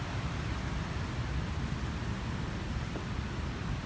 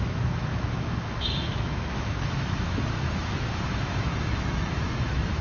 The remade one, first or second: second